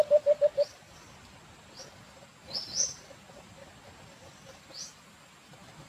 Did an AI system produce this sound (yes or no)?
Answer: no